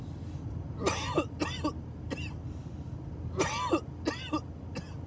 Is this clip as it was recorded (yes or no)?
yes